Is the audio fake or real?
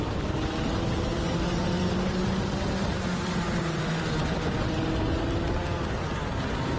real